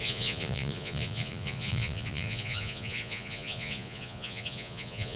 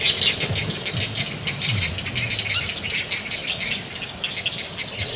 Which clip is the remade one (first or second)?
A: first